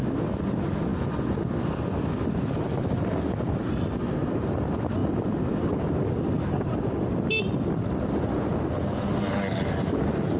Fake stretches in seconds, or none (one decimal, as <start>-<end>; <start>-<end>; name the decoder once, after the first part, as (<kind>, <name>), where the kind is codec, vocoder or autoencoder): none